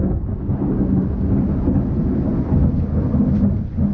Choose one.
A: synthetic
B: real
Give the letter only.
B